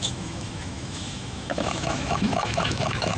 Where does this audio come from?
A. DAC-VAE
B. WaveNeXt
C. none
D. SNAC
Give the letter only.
A